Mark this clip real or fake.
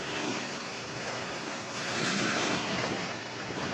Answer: fake